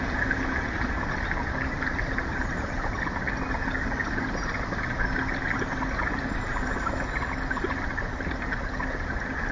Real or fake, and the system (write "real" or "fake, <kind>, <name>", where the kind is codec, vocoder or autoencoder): real